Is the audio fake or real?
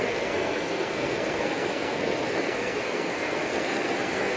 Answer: fake